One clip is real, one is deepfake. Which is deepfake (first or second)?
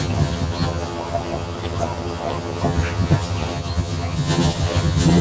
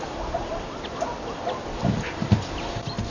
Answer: first